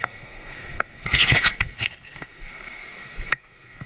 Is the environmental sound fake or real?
fake